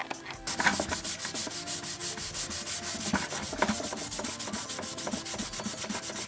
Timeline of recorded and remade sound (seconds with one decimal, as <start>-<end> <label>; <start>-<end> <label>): 0.0-6.3 recorded

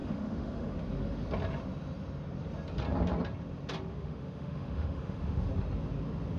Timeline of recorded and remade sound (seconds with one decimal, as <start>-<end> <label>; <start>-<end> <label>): 0.0-0.7 remade; 0.7-3.9 recorded; 3.9-5.5 remade; 5.5-6.4 recorded

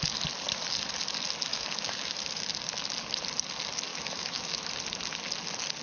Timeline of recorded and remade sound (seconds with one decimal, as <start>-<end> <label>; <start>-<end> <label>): 0.0-1.5 recorded; 1.5-2.1 remade; 2.1-3.9 recorded; 3.9-4.7 remade; 4.7-5.8 recorded

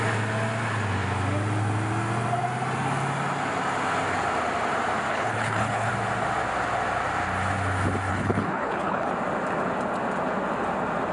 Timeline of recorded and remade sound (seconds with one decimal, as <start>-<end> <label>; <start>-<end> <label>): 0.0-5.1 recorded; 5.1-5.9 remade; 5.9-8.1 recorded; 8.1-9.1 remade; 9.1-11.1 recorded

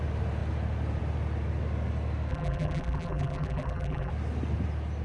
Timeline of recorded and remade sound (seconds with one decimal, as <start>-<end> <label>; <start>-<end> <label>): 0.0-2.3 recorded; 2.3-4.1 remade; 4.1-5.0 recorded

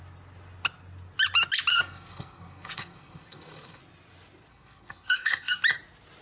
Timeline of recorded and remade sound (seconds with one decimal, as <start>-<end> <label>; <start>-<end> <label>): 0.0-1.7 recorded; 1.7-3.8 remade; 3.8-4.5 recorded; 4.5-5.6 remade; 5.6-6.2 recorded

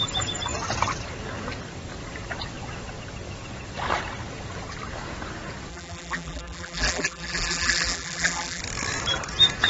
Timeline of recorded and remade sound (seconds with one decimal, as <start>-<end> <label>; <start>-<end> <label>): 0.0-5.7 recorded; 5.7-8.6 remade; 8.6-9.7 recorded